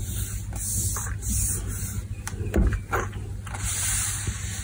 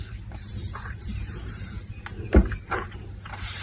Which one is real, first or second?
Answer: first